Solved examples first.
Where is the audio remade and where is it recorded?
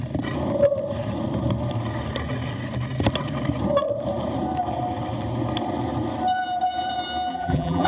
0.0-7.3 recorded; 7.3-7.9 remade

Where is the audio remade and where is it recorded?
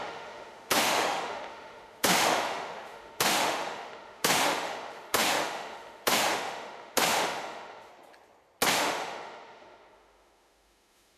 0.0-7.9 remade; 7.9-8.7 recorded; 8.7-11.2 remade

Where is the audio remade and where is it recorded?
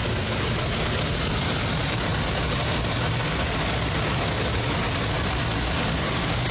0.0-2.1 remade; 2.1-6.0 recorded; 6.0-6.5 remade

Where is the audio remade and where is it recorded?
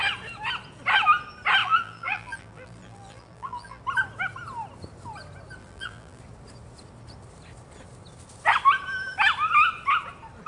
0.0-1.6 recorded; 1.6-3.8 remade; 3.8-5.6 recorded; 5.6-6.2 remade; 6.2-10.5 recorded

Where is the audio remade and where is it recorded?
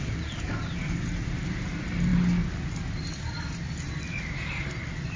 0.0-5.2 recorded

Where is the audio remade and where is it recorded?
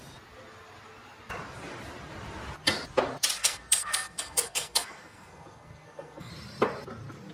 0.0-3.4 recorded; 3.4-6.3 remade; 6.3-7.3 recorded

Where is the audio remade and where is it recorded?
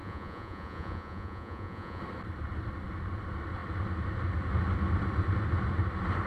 0.0-2.0 remade; 2.0-6.3 recorded